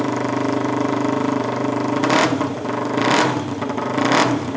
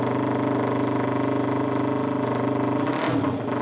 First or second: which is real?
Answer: second